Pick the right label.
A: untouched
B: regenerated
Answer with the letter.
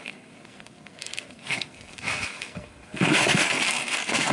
B